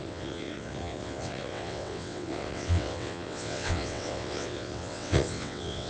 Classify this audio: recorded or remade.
remade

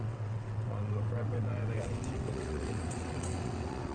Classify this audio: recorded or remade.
remade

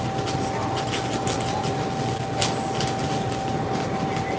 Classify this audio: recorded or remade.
recorded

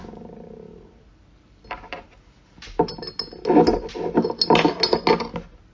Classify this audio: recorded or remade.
recorded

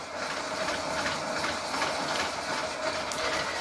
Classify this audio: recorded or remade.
recorded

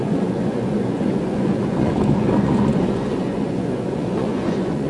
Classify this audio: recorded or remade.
remade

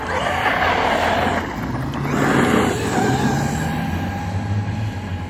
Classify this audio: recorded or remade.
recorded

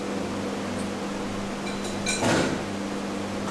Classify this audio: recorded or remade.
recorded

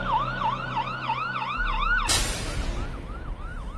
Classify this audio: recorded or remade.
recorded